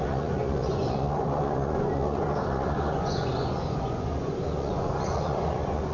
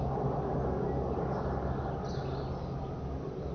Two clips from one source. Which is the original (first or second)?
second